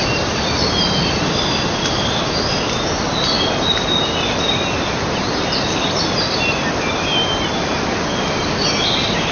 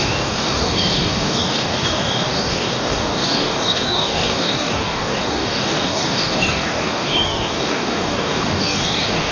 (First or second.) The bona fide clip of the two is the first